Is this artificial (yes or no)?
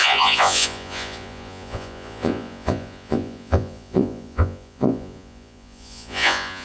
yes